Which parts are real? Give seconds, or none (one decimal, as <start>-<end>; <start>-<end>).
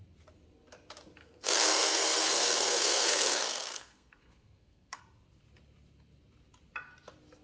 0.0-1.2; 5.0-7.4